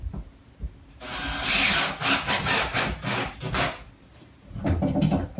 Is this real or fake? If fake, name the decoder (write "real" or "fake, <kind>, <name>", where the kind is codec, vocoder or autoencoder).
real